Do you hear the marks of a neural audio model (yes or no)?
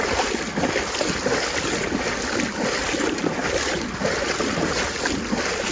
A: no